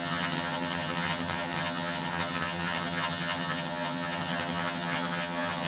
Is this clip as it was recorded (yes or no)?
no